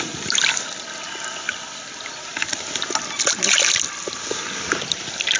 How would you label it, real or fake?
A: real